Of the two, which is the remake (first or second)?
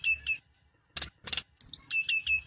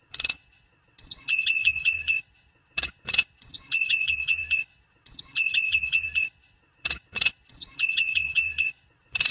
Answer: second